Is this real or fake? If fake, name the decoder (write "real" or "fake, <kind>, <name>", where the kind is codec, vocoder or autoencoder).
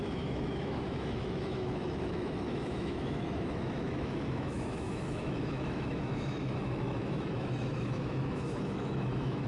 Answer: fake, autoencoder, DAC-VAE